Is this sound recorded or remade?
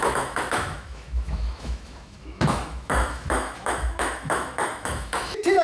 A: remade